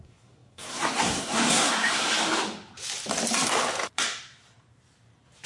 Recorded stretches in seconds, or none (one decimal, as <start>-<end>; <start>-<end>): 2.1-5.5